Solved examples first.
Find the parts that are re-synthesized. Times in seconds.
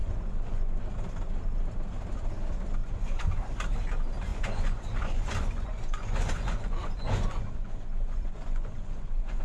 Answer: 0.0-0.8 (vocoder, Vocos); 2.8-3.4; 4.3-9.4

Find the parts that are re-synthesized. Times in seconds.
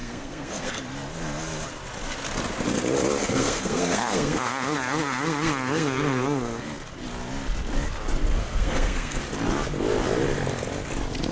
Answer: 0.0-0.8 (codec, SNAC); 3.2-6.7; 8.4-9.2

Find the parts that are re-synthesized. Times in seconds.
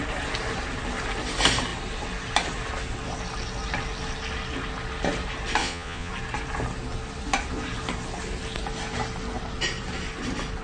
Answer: 5.6-6.1 (vocoder, Vocos)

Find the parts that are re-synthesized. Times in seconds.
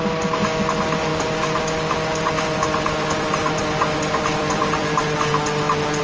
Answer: none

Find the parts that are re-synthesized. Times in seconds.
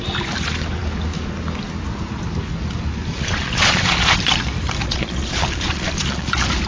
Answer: 3.1-4.2 (vocoder, Vocos); 4.9-6.3